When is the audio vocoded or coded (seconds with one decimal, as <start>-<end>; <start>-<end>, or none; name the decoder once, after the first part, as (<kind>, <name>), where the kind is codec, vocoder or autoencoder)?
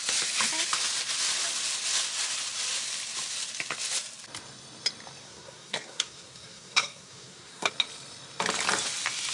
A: 5.2-7.7 (codec, SNAC)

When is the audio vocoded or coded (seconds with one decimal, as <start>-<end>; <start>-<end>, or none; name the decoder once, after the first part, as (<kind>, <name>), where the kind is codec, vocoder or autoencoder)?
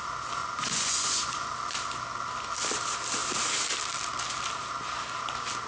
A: 0.4-1.5 (vocoder, Vocos)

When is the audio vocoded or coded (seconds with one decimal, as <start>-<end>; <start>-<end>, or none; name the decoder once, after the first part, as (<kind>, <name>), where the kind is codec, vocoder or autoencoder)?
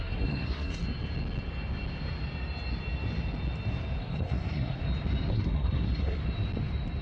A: 0.0-0.8 (codec, SNAC); 4.0-4.8; 5.3-6.2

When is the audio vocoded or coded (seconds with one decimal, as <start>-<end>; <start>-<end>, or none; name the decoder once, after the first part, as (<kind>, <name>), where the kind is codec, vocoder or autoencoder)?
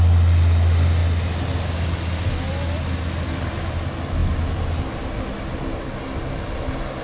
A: none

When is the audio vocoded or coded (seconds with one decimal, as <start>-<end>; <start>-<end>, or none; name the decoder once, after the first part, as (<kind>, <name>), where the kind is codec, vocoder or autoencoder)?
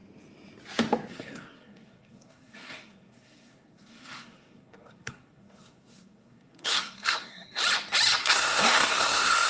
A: 1.1-7.6 (codec, SNAC); 8.2-9.5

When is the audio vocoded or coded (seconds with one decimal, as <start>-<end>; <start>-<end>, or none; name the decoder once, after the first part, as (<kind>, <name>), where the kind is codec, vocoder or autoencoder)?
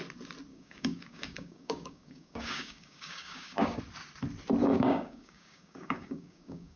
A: 0.5-3.8 (codec, DAC); 4.6-6.8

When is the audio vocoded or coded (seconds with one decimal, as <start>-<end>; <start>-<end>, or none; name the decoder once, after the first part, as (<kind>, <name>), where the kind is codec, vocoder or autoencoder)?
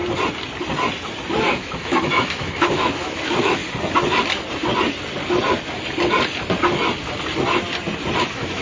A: 1.3-3.6 (autoencoder, DAC-VAE); 8.2-8.6